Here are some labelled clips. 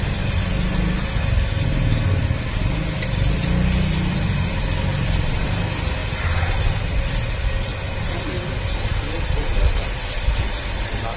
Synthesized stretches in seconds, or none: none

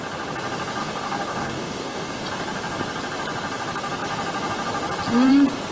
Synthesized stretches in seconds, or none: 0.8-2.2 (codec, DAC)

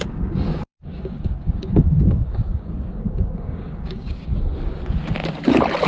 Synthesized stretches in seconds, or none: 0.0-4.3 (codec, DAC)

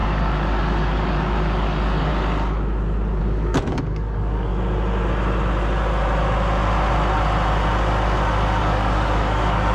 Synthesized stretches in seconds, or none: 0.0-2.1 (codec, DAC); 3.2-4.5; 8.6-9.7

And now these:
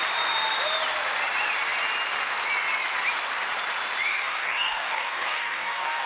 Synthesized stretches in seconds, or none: 4.1-6.1 (codec, DAC)